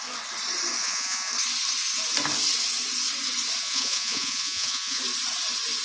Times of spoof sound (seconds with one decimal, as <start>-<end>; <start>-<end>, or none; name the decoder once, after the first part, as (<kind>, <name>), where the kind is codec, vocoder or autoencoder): 0.8-1.3 (vocoder, Vocos); 3.6-5.0